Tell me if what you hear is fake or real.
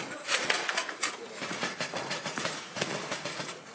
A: fake